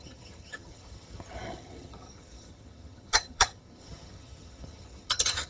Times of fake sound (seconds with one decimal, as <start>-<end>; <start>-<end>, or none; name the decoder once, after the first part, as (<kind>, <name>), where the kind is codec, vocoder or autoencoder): 0.0-5.5 (vocoder, HiFi-GAN)